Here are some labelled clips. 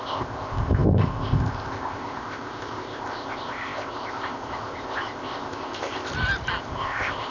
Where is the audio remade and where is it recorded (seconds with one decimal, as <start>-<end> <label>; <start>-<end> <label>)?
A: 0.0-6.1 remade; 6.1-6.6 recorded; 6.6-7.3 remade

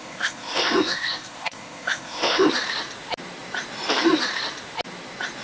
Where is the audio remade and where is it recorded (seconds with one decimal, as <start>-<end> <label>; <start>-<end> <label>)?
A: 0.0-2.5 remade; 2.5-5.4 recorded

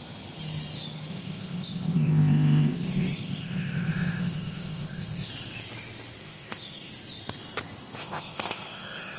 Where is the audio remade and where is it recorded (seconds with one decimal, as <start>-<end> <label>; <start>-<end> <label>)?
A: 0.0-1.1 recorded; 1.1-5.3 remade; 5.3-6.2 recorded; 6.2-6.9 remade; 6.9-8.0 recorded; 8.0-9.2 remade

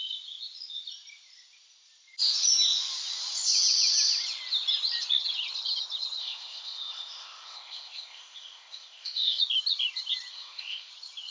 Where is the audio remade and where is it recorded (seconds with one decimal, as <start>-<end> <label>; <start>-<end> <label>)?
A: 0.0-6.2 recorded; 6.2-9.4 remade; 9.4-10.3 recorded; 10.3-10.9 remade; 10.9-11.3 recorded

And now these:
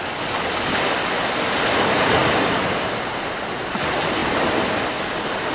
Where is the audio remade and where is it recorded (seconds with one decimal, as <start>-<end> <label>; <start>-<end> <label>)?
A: 0.0-5.5 recorded

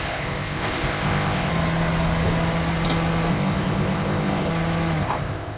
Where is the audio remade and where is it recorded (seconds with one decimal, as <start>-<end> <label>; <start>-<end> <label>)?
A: 0.0-1.5 remade; 1.5-3.3 recorded; 3.3-4.5 remade; 4.5-5.0 recorded; 5.0-5.6 remade

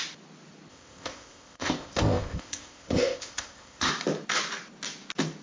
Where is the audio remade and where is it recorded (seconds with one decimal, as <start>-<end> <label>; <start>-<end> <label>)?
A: 0.0-0.7 recorded; 0.7-3.9 remade; 3.9-5.4 recorded

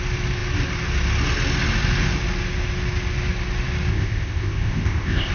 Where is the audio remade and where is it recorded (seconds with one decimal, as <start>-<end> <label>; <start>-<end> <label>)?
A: 0.0-3.9 recorded; 3.9-5.3 remade